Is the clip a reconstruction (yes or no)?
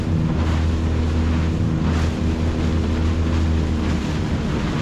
no